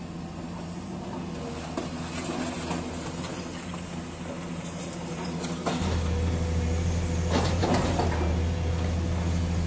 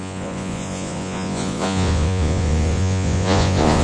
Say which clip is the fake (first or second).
second